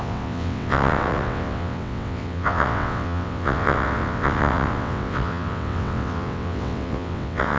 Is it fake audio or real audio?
fake